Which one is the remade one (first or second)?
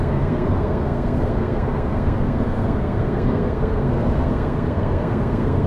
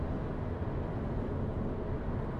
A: first